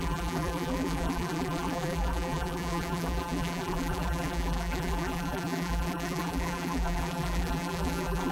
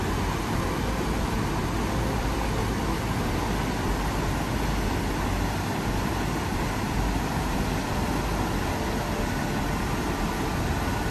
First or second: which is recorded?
second